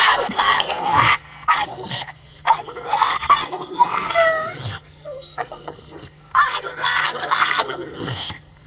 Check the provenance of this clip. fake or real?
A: fake